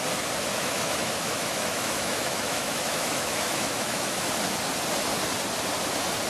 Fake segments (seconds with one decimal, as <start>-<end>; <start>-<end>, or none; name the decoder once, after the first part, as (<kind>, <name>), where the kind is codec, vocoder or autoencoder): 0.5-4.3 (autoencoder, DAC-VAE)